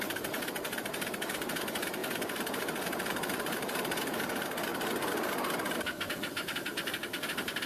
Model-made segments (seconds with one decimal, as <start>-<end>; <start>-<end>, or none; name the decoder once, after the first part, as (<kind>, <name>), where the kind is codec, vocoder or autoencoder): 0.0-7.7 (vocoder, BigVGAN v2)